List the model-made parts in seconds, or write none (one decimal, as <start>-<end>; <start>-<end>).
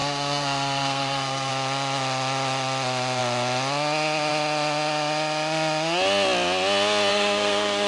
0.0-1.5; 7.1-7.9